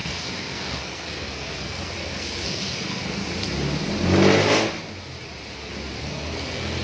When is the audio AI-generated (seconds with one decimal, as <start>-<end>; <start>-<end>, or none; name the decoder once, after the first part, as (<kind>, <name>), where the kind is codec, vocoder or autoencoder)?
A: 0.0-3.2 (codec, SNAC); 6.0-6.8